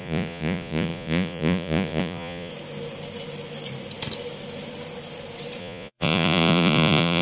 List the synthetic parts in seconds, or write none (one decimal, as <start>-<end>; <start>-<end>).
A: 0.0-2.5; 5.6-7.2